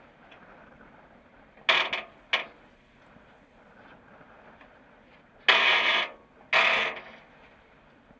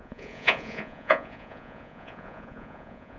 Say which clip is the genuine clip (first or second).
first